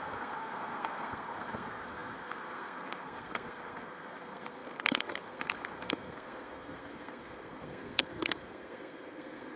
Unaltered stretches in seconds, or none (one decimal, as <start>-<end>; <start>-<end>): none